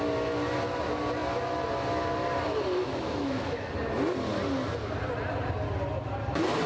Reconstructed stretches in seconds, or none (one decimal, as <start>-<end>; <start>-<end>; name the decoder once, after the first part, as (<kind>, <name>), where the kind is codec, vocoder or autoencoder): 2.8-3.7 (autoencoder, DAC-VAE)